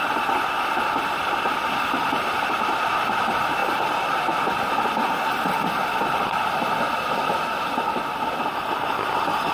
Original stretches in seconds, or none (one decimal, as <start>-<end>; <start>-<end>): 0.0-9.5